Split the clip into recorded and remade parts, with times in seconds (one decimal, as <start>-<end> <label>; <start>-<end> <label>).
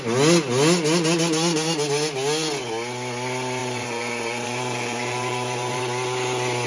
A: 0.0-3.6 recorded; 3.6-5.8 remade; 5.8-6.7 recorded